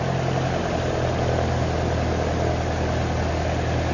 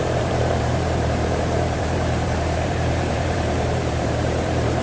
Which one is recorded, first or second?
first